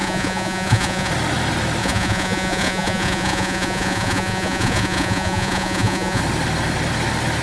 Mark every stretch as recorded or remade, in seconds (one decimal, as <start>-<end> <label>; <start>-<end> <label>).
0.0-1.1 remade; 1.1-1.8 recorded; 1.8-6.2 remade; 6.2-7.4 recorded